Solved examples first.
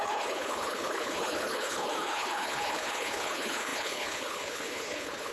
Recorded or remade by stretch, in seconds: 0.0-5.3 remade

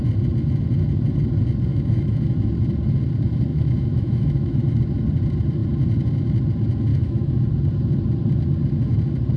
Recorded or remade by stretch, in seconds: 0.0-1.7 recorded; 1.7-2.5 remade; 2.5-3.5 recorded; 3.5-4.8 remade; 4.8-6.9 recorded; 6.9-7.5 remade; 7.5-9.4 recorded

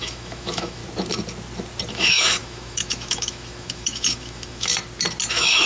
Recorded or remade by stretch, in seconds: 0.0-0.8 remade; 0.8-1.9 recorded; 1.9-4.7 remade; 4.7-5.3 recorded; 5.3-5.7 remade

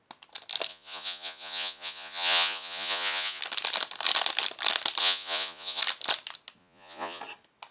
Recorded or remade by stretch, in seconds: 0.0-0.7 recorded; 0.7-3.4 remade; 3.4-5.0 recorded; 5.0-5.8 remade; 5.8-6.6 recorded; 6.6-7.2 remade; 7.2-7.7 recorded

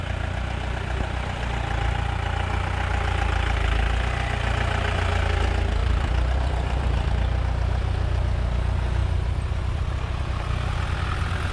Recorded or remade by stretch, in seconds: 0.0-5.8 recorded; 5.8-7.1 remade; 7.1-9.0 recorded; 9.0-10.5 remade; 10.5-11.5 recorded

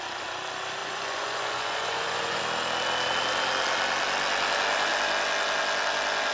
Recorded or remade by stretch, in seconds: 0.0-0.8 recorded; 0.8-2.4 remade; 2.4-6.3 recorded